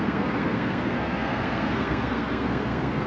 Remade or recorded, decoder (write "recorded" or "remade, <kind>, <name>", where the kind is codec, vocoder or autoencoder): remade, codec, SNAC